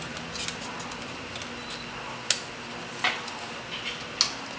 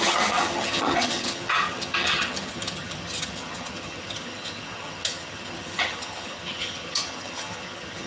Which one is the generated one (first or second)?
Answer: second